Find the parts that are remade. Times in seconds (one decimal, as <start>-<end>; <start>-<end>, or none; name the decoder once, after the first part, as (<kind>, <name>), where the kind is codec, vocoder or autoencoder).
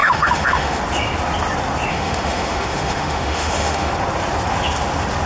0.0-0.8 (autoencoder, DAC-VAE); 1.9-3.9